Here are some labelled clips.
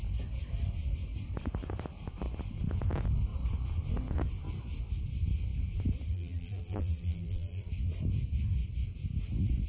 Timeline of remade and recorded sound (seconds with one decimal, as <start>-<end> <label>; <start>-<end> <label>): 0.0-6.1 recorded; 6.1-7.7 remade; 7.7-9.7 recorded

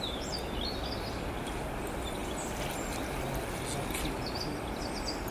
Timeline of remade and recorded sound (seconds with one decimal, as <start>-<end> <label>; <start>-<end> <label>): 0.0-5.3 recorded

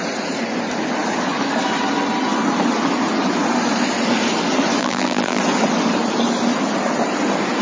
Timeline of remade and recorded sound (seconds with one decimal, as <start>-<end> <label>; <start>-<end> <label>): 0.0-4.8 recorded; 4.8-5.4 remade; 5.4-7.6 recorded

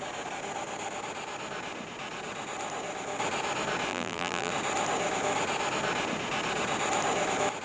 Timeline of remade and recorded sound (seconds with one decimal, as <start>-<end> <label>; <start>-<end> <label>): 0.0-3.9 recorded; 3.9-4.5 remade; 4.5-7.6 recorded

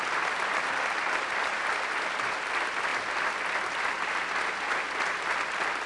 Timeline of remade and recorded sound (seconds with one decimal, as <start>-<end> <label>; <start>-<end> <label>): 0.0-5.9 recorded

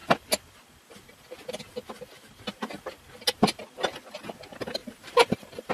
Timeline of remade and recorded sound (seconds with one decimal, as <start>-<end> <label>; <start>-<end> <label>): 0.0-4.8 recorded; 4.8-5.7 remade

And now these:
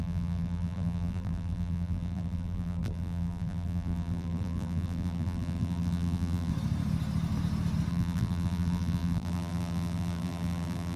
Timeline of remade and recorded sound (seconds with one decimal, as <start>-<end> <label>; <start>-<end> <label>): 0.0-6.5 remade; 6.5-7.9 recorded; 7.9-11.0 remade

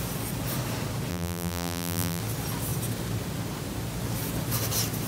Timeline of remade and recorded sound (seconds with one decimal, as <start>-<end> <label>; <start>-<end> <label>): 0.0-1.1 recorded; 1.1-2.2 remade; 2.2-5.1 recorded